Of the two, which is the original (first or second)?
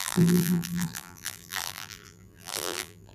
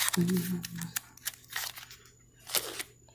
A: second